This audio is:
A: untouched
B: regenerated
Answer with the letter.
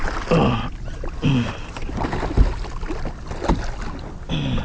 A